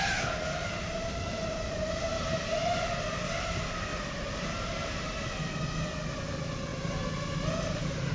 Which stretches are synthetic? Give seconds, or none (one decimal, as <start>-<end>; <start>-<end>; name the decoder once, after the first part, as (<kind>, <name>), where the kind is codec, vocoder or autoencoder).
0.6-2.9 (vocoder, BigVGAN v2); 3.9-5.6; 6.7-8.1